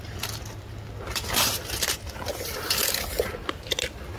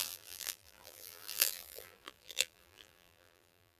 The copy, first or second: second